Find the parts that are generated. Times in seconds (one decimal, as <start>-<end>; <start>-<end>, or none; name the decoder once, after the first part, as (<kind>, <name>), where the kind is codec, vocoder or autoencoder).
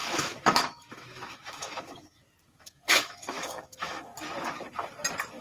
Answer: 0.0-4.1 (autoencoder, DAC-VAE)